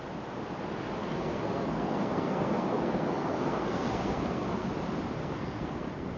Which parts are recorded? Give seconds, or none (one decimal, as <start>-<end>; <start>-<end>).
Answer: 0.0-1.0; 4.7-5.2